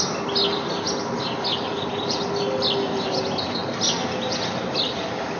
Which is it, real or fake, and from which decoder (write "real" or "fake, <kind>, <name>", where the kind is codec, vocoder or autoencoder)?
real